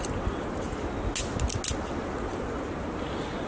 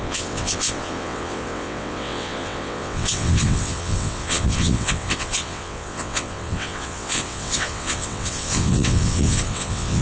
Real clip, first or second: first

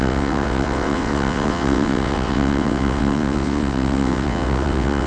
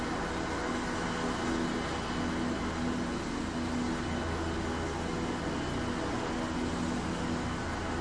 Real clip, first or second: second